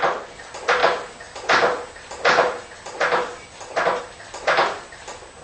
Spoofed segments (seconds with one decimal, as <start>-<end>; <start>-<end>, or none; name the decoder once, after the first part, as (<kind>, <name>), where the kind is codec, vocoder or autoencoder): none